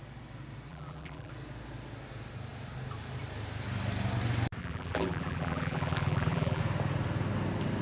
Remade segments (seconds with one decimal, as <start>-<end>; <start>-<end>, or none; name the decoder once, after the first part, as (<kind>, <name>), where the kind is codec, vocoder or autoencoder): 0.7-1.3 (vocoder, BigVGAN v2); 4.6-6.6